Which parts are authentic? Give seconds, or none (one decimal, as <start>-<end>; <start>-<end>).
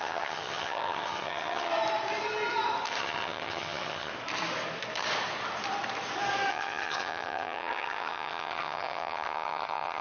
1.7-3.0; 4.1-6.5